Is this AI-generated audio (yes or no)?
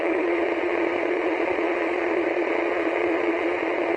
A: yes